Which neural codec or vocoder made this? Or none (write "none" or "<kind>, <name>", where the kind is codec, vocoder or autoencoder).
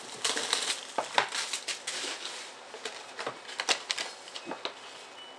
none